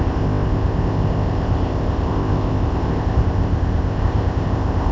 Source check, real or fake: fake